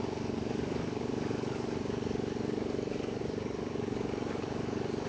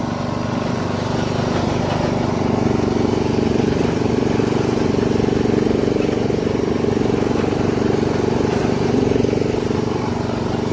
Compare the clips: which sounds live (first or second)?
second